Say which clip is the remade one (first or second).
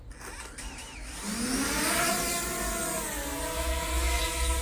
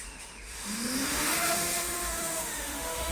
second